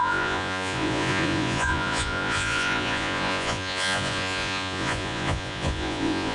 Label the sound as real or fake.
fake